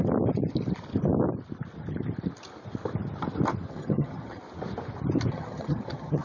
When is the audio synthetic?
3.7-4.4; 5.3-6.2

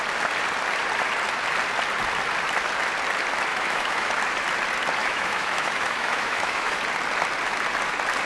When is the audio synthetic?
3.5-4.1; 5.0-6.8

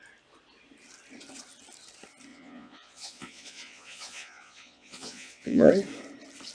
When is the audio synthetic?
2.3-5.7

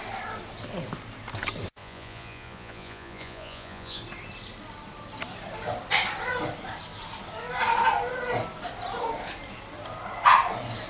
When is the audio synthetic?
1.8-4.0

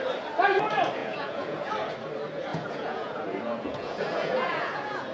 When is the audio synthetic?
1.0-1.7; 2.5-5.1

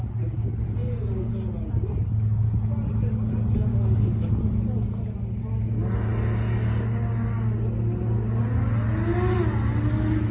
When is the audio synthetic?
0.8-1.3; 3.7-4.3

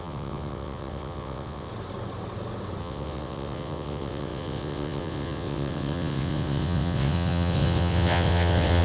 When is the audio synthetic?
0.0-1.7; 2.8-8.8

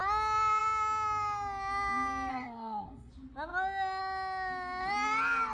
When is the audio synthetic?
2.3-3.1